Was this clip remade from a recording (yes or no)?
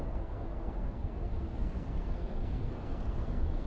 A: yes